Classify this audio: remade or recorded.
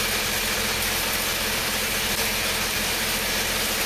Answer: remade